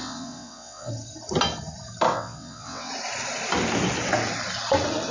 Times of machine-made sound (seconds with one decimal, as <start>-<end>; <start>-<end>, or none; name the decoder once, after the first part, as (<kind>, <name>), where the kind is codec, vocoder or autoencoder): 0.0-0.9 (vocoder, WaveNeXt); 2.1-2.9